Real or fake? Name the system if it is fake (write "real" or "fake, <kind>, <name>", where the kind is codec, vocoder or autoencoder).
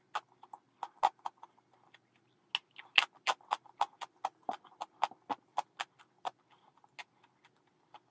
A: real